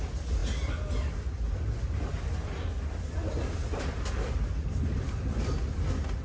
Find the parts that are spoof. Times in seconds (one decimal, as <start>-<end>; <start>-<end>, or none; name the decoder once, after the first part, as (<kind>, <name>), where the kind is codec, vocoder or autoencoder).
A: none

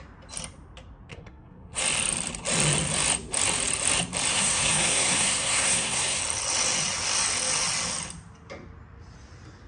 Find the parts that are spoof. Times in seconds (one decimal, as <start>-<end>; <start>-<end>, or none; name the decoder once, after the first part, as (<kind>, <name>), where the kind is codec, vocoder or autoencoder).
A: 1.1-1.8 (codec, SNAC); 4.3-6.2

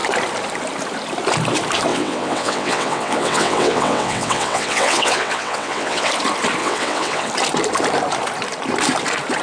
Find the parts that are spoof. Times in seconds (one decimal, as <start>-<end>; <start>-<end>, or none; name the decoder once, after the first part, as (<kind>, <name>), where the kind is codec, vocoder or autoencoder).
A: 1.9-6.1 (vocoder, WaveNeXt); 6.6-7.3

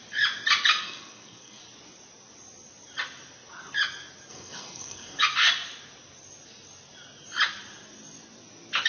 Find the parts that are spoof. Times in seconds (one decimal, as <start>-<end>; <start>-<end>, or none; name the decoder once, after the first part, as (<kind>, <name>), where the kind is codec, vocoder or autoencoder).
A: 0.8-1.6 (codec, SNAC); 4.3-5.2

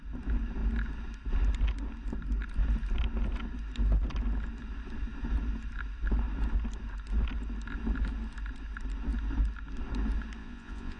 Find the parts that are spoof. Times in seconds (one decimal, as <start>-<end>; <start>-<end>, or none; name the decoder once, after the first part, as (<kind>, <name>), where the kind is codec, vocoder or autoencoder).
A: 10.4-11.0 (vocoder, Vocos)

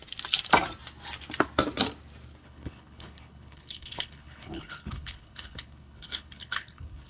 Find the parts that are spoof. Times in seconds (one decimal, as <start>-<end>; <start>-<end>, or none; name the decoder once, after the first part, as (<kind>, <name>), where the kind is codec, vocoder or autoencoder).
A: 2.4-7.1 (codec, HILCodec)